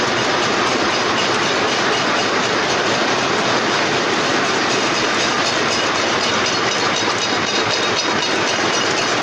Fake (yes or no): no